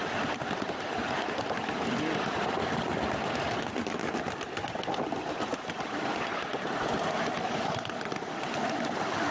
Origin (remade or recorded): recorded